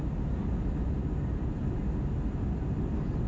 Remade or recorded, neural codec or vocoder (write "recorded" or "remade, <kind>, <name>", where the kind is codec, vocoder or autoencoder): recorded